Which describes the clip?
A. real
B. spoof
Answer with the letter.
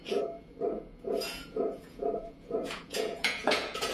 B